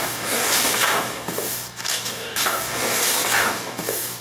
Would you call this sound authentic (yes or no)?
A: no